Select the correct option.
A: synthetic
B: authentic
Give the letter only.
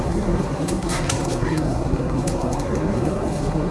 A